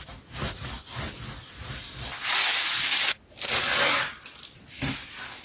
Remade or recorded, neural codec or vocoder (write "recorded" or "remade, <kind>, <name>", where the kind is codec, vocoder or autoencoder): recorded